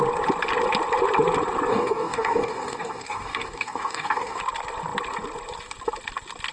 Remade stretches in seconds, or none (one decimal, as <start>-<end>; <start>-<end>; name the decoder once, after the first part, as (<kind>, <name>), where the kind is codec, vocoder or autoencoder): 1.7-4.4 (codec, DAC)